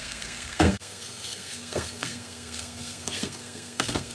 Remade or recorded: remade